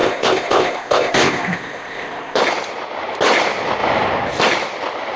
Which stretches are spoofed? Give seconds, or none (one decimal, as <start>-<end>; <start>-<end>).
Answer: 0.0-2.4